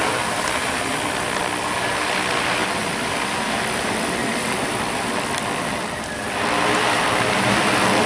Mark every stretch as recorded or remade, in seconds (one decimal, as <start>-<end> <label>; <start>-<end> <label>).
0.0-1.4 remade; 1.4-2.6 recorded; 2.6-3.2 remade; 3.2-4.2 recorded; 4.2-5.1 remade; 5.1-8.1 recorded